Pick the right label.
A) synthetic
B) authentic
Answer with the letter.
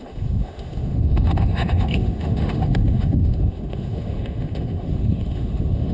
A